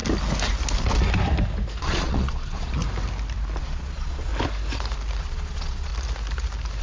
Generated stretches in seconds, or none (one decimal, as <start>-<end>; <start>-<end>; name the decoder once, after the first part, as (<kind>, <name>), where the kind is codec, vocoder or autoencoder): 1.8-2.8 (vocoder, Vocos); 3.6-4.3; 5.2-5.9